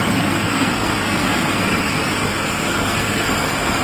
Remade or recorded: remade